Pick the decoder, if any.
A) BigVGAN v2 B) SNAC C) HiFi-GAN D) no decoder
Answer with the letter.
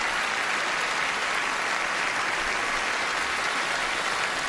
D